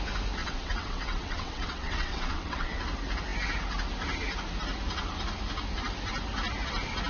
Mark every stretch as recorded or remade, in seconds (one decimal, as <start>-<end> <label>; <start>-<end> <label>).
0.0-0.4 recorded; 0.4-2.8 remade; 2.8-7.1 recorded